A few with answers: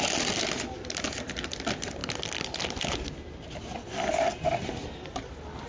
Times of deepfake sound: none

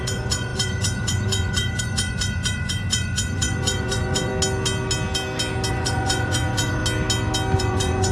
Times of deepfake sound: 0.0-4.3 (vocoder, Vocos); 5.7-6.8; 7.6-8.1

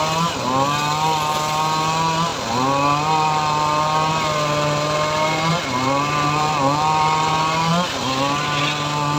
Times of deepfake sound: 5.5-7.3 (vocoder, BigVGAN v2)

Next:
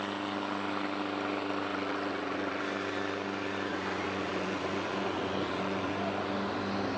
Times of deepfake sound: 1.7-2.6 (vocoder, Vocos); 3.7-5.9